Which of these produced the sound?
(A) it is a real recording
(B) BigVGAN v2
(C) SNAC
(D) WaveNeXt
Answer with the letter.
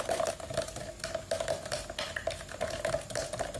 A